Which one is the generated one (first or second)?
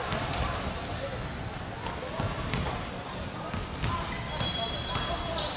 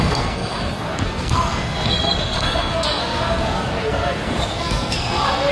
second